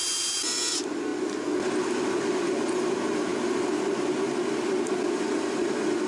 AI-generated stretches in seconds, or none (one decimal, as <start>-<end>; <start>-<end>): none